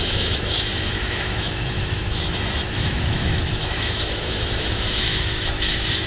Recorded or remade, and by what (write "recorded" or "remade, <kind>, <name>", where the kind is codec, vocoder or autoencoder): remade, autoencoder, DAC-VAE